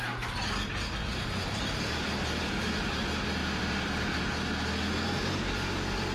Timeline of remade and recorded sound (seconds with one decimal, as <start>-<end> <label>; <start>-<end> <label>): 0.0-1.0 recorded; 1.0-2.5 remade; 2.5-3.4 recorded; 3.4-4.2 remade; 4.2-6.1 recorded